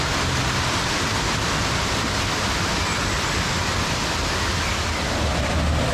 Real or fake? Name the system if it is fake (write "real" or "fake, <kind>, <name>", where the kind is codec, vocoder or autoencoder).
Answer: real